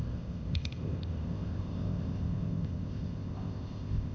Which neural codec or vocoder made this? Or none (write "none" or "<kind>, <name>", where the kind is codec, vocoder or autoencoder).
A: codec, ZipCodec